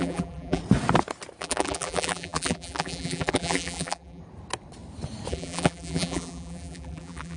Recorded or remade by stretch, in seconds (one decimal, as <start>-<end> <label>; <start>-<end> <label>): 0.0-0.6 remade; 0.6-1.4 recorded; 1.4-4.2 remade; 4.2-5.3 recorded; 5.3-7.4 remade